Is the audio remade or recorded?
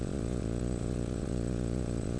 remade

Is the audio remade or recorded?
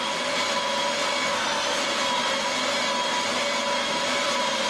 recorded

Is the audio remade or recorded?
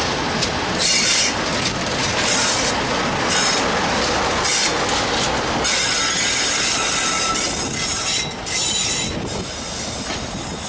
recorded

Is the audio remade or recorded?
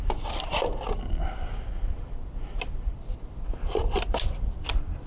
recorded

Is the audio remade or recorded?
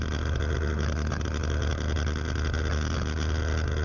recorded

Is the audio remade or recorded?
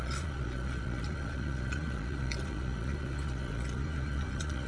remade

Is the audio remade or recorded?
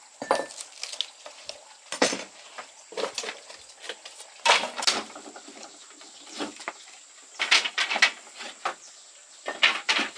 recorded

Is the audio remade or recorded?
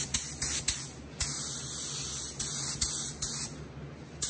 recorded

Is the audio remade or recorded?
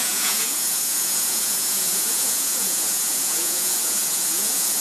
remade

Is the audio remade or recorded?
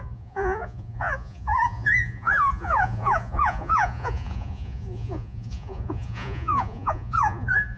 remade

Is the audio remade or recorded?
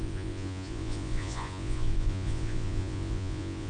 remade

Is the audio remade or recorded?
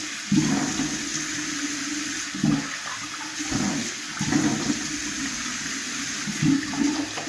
recorded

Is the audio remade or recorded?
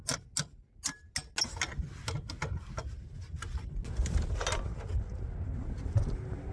recorded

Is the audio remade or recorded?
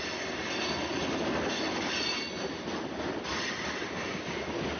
recorded